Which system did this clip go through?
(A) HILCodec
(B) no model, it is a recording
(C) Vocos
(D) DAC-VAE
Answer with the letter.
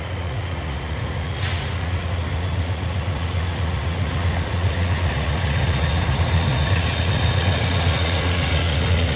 C